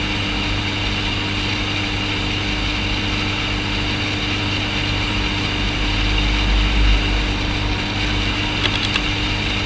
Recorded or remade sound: recorded